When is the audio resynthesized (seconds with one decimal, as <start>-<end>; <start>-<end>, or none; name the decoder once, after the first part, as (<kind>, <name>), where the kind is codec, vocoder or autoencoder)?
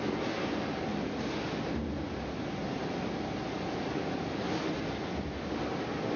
none